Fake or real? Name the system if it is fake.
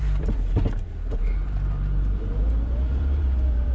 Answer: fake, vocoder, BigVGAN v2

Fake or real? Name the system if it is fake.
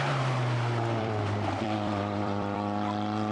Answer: fake, vocoder, BigVGAN v2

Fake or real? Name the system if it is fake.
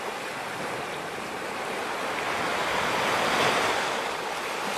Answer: real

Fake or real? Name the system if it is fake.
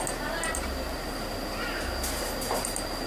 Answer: real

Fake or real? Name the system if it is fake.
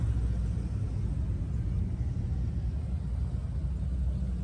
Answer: real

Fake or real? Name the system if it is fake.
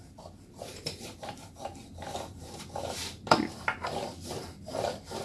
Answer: fake, vocoder, BigVGAN v2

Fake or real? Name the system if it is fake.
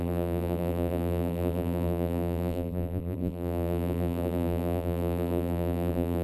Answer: fake, vocoder, BigVGAN v2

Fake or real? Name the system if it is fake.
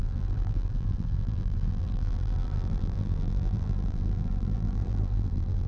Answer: fake, vocoder, BigVGAN v2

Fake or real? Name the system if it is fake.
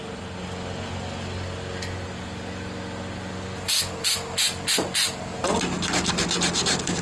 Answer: real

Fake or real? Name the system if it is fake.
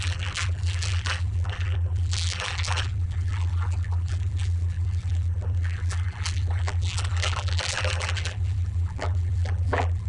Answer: fake, vocoder, BigVGAN v2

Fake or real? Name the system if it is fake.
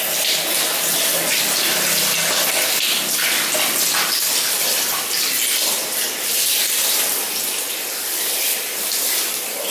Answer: real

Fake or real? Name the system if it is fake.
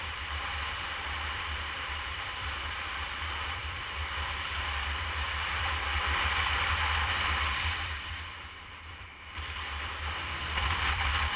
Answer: fake, vocoder, BigVGAN v2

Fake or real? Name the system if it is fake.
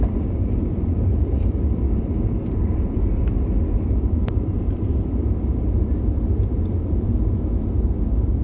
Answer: fake, vocoder, BigVGAN v2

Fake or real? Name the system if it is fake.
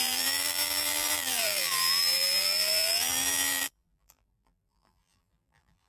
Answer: fake, vocoder, BigVGAN v2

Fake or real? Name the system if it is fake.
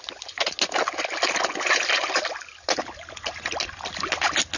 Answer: real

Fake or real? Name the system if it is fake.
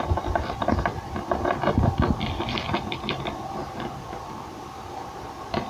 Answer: real